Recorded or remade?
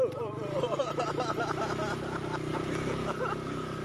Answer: remade